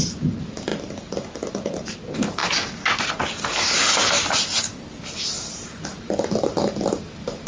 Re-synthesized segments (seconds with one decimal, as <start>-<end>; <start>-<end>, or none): 0.0-2.4; 5.5-7.5